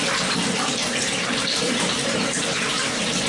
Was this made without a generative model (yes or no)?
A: no